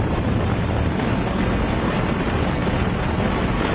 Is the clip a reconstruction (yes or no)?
no